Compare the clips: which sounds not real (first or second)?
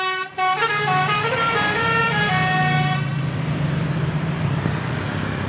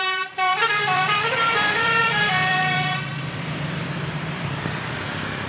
second